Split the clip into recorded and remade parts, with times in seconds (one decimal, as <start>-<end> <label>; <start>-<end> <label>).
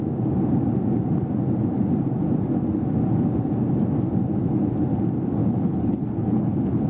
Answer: 0.0-5.4 recorded; 5.4-6.9 remade